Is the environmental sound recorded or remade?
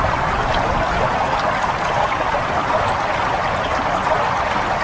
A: recorded